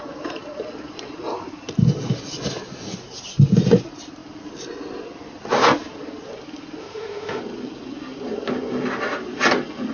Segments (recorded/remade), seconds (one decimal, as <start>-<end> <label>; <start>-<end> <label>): 0.0-6.8 recorded; 6.8-7.4 remade; 7.4-9.9 recorded